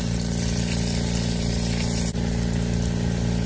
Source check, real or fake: real